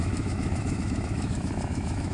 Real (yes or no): no